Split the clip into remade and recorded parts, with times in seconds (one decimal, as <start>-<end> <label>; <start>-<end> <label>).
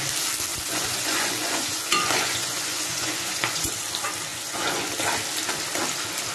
0.0-0.5 recorded; 0.5-3.7 remade; 3.7-4.3 recorded; 4.3-4.9 remade; 4.9-6.3 recorded